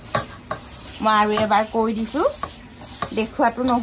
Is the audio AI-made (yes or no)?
no